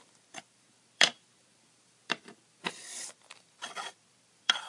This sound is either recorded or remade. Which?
remade